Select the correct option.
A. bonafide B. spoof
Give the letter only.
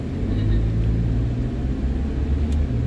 A